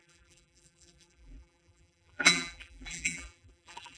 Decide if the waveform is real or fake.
fake